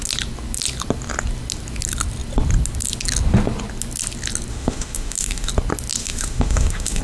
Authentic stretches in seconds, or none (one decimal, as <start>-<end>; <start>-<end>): 0.0-4.5; 5.5-6.0